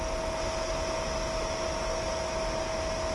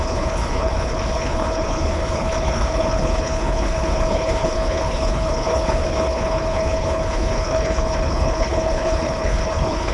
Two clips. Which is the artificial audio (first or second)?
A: second